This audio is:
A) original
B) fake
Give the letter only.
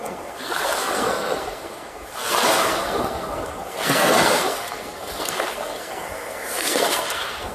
B